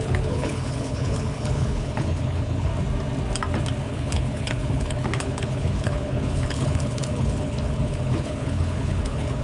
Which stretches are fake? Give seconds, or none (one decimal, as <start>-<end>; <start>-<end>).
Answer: 0.0-2.7; 3.8-9.4

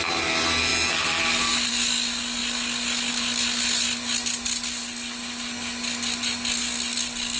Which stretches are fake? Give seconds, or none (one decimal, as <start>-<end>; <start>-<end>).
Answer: none

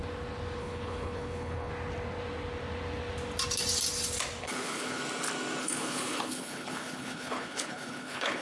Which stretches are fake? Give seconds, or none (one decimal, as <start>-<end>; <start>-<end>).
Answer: 0.6-1.7; 4.4-5.0; 5.6-8.4

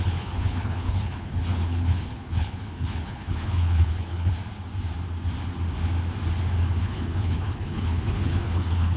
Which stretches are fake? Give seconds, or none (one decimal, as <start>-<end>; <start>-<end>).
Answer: 0.0-4.3; 6.8-9.0

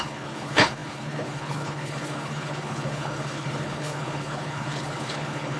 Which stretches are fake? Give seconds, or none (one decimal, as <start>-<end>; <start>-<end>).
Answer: 0.0-5.6

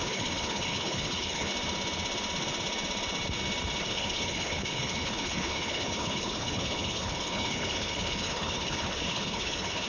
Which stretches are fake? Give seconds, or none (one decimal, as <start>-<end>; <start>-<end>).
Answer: 0.0-1.5; 3.8-9.9

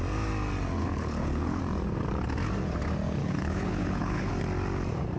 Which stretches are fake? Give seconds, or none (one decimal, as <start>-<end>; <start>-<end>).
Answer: 0.8-1.6; 3.2-4.3

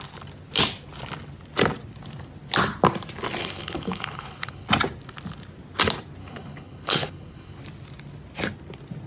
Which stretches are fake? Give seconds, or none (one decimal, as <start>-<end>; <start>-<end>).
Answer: 3.4-4.7; 6.2-7.6